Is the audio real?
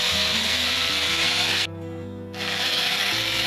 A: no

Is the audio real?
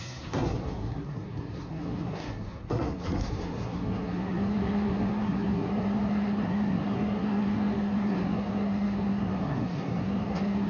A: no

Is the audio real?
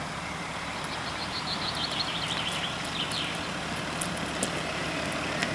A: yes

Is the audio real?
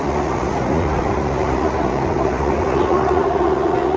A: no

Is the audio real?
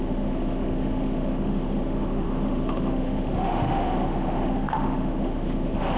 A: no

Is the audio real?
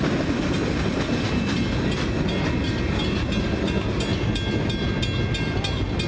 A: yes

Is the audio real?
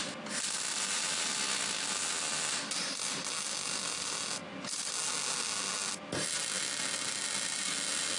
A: yes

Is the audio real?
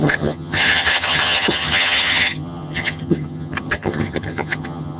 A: no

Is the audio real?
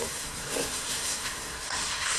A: no